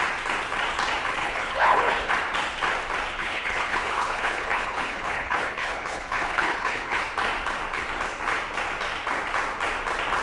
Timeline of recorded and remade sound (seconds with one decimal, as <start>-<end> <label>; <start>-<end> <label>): 0.0-1.2 recorded; 1.2-2.1 remade; 2.1-3.1 recorded; 3.1-7.0 remade; 7.0-10.2 recorded